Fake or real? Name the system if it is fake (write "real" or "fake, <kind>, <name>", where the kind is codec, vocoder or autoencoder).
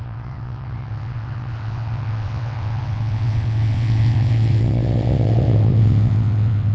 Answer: fake, vocoder, WaveNeXt